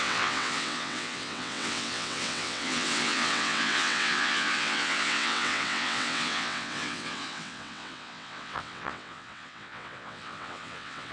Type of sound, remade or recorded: remade